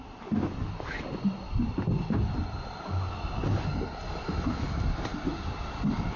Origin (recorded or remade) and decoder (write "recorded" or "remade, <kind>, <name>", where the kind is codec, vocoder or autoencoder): recorded